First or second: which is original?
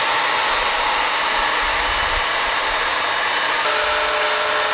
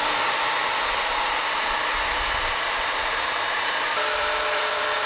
first